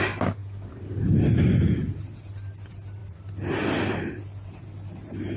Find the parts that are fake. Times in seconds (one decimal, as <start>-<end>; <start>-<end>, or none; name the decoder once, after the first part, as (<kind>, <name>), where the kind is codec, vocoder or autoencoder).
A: none